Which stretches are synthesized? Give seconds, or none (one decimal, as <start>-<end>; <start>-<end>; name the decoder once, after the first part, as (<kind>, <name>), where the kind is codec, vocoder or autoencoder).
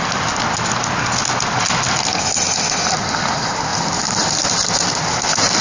none